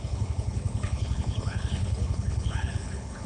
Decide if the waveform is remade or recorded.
remade